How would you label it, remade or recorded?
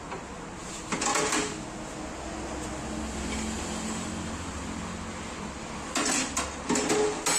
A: recorded